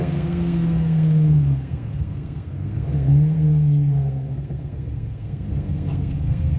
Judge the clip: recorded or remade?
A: remade